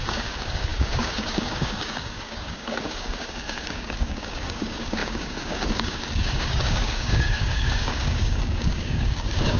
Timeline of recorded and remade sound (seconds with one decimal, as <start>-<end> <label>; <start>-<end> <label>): 0.0-9.6 remade